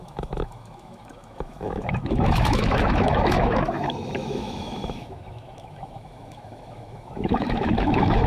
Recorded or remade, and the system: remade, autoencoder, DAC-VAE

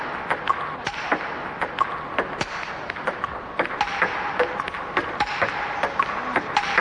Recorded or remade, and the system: recorded